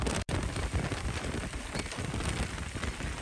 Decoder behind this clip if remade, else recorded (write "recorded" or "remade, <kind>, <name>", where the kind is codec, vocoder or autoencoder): recorded